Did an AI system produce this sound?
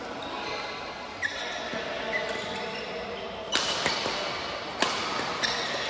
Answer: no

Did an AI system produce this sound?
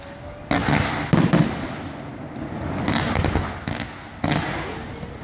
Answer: no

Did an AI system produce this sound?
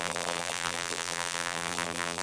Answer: yes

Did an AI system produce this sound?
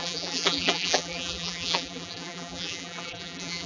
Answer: yes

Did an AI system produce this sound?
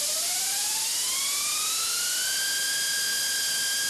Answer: no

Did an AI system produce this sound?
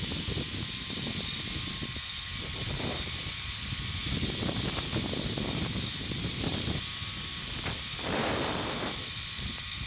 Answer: no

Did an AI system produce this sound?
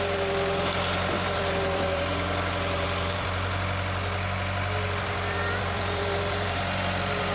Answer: yes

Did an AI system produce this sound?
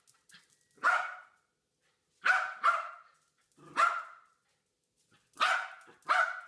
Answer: no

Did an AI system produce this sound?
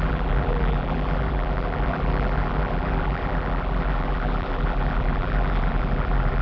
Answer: yes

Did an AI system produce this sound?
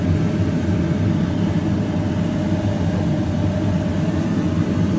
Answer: no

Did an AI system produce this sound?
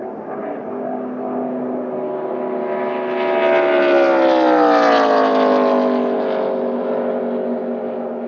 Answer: no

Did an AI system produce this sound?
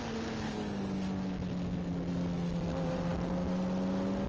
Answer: no